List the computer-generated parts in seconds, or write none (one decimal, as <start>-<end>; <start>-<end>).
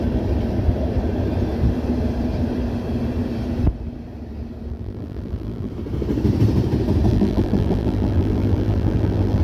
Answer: 4.7-5.7; 7.1-9.4